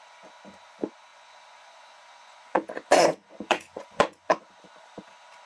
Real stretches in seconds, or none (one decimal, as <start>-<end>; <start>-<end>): 0.0-1.1; 4.4-5.5